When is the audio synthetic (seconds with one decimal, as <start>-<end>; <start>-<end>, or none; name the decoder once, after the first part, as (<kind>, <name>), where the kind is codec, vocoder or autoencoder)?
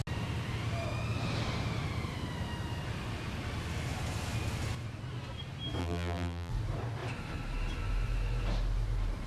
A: 5.8-6.5 (vocoder, BigVGAN v2)